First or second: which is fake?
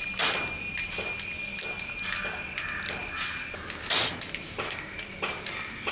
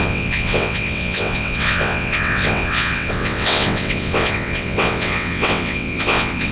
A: second